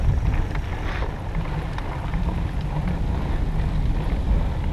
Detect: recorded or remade recorded